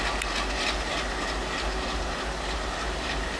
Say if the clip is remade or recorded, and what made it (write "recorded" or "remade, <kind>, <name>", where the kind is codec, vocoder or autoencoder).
recorded